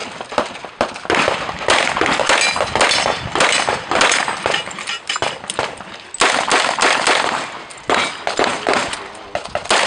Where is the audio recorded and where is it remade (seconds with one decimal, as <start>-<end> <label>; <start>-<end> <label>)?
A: 0.0-9.9 recorded

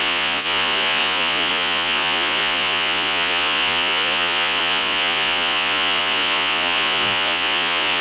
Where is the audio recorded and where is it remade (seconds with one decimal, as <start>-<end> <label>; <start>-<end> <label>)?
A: 0.0-8.0 remade